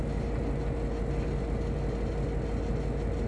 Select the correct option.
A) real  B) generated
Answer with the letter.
A